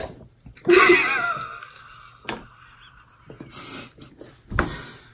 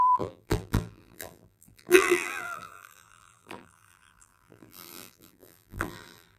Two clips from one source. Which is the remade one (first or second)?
second